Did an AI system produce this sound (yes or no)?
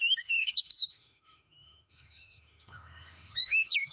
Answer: yes